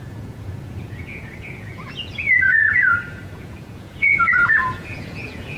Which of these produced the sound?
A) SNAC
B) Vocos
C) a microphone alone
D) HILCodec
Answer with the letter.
B